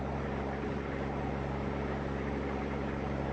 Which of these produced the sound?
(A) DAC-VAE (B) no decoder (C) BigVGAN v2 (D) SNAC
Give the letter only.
C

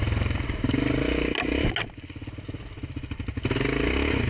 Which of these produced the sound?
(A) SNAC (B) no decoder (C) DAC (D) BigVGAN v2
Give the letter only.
B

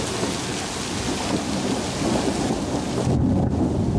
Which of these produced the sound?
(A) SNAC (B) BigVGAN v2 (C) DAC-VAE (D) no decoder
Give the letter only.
D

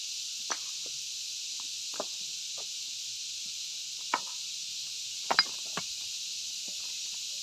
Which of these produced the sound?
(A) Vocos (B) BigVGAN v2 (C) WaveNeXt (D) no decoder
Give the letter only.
D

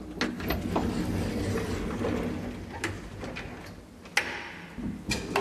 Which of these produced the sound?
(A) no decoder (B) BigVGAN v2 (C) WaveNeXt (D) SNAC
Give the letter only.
A